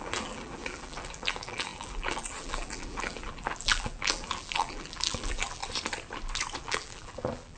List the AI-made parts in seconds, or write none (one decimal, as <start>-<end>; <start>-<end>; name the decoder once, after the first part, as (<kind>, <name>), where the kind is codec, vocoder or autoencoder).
0.0-5.6 (vocoder, BigVGAN v2); 6.6-7.6